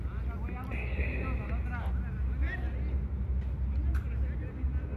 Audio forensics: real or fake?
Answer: real